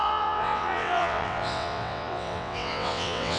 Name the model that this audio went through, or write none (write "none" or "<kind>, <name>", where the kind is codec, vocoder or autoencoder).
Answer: vocoder, WaveNeXt